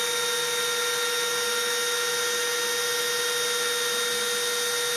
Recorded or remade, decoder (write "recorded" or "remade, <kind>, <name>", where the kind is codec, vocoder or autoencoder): recorded